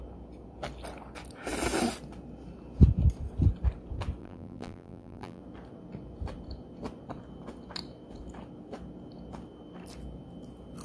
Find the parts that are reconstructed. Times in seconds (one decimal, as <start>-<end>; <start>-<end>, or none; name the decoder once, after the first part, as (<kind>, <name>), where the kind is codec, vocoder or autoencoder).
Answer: 4.2-5.4 (vocoder, BigVGAN v2)